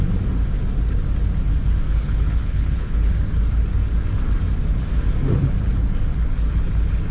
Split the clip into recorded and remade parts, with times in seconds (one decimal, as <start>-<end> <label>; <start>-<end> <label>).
0.0-1.9 recorded; 1.9-3.1 remade; 3.1-7.1 recorded